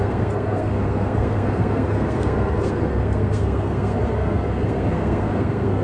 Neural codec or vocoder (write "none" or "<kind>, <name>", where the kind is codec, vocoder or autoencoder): codec, SNAC